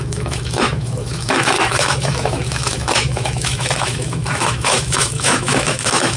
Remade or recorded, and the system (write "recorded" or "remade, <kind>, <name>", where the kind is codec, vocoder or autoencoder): remade, autoencoder, DAC-VAE